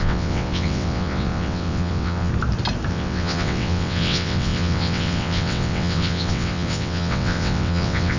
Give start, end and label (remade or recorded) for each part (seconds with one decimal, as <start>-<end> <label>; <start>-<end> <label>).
0.0-2.3 remade; 2.3-2.9 recorded; 2.9-8.2 remade